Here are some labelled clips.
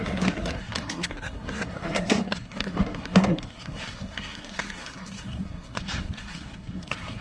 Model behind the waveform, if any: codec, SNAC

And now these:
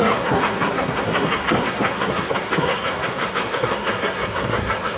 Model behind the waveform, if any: codec, SNAC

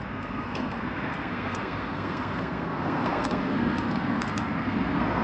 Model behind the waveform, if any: codec, SNAC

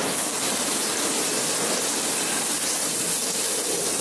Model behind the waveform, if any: none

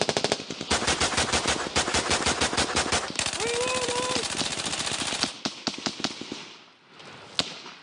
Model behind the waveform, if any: none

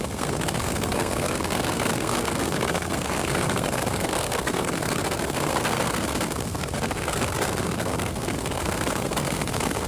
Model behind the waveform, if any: codec, SNAC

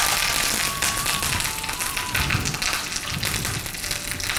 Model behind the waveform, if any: none